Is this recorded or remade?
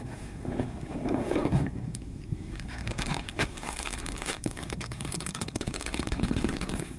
remade